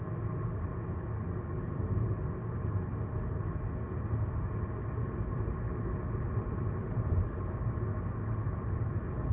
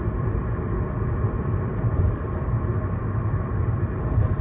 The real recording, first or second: first